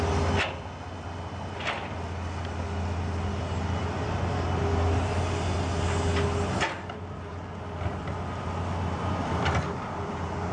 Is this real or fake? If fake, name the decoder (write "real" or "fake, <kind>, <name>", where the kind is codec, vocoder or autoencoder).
real